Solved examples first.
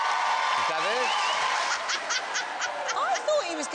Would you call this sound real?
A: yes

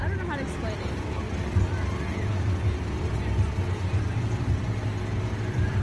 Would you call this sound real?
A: no